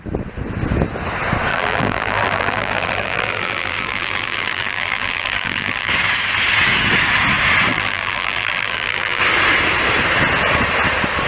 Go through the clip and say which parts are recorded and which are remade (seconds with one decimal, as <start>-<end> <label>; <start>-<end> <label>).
0.0-1.5 recorded; 1.5-5.9 remade; 5.9-7.7 recorded; 7.7-9.2 remade; 9.2-11.3 recorded